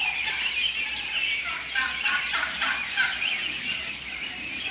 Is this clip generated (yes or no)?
no